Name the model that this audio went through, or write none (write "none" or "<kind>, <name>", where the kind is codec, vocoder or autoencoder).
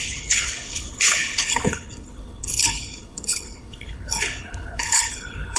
codec, HILCodec